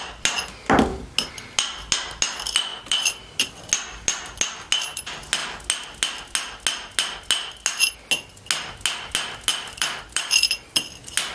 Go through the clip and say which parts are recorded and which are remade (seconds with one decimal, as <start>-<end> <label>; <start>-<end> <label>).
0.0-2.7 recorded; 2.7-3.6 remade; 3.6-9.5 recorded; 9.5-10.9 remade; 10.9-11.3 recorded